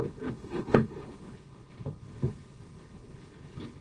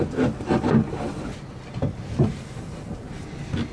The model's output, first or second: first